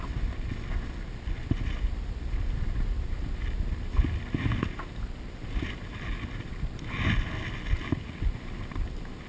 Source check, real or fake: real